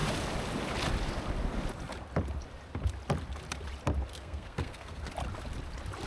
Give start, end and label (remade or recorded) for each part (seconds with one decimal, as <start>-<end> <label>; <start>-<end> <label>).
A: 0.0-4.1 recorded; 4.1-5.1 remade; 5.1-6.1 recorded

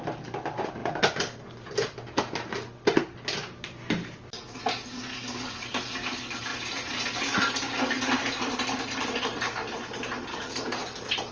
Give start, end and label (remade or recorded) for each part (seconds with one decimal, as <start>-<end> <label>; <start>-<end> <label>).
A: 0.0-5.1 recorded; 5.1-5.6 remade; 5.6-10.3 recorded; 10.3-10.8 remade; 10.8-11.3 recorded

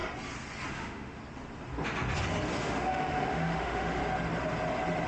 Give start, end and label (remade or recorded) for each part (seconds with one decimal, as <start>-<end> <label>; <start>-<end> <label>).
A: 0.0-0.7 recorded; 0.7-1.2 remade; 1.2-2.6 recorded; 2.6-4.0 remade; 4.0-5.1 recorded

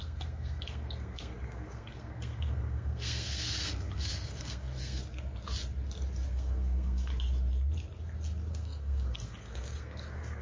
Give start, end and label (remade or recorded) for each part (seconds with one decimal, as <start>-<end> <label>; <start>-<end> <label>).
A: 0.0-5.0 remade; 5.0-6.3 recorded; 6.3-7.1 remade; 7.1-8.5 recorded; 8.5-10.4 remade

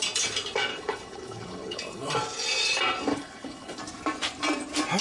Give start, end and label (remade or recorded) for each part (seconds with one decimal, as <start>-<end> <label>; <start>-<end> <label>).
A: 0.0-0.7 recorded; 0.7-2.1 remade; 2.1-3.1 recorded; 3.1-3.8 remade; 3.8-5.0 recorded

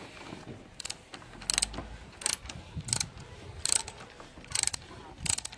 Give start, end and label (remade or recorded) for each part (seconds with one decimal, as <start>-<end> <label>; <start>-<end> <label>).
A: 0.0-5.6 recorded